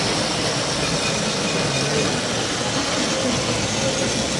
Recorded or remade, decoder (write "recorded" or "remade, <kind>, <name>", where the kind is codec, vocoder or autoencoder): recorded